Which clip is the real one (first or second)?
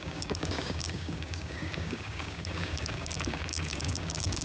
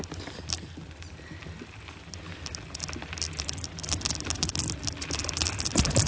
second